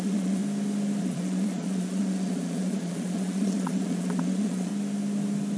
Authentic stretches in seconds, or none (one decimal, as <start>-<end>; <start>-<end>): 0.4-1.0; 4.7-5.6